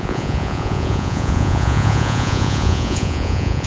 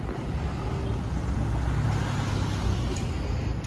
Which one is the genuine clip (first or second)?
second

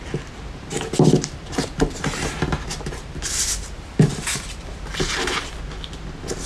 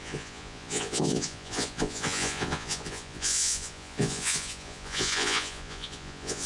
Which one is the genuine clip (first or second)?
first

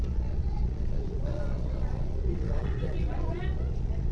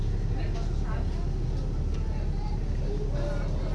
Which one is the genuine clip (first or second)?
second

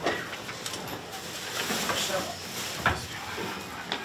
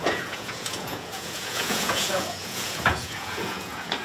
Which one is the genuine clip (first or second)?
first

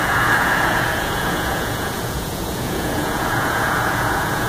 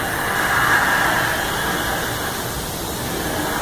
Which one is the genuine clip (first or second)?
second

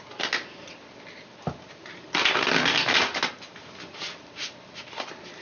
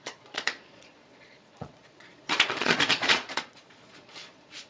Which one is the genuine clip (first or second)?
first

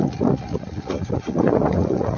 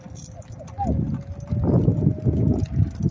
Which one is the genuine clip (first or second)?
second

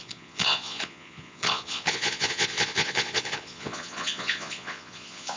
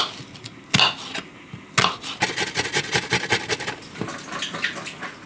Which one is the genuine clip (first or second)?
second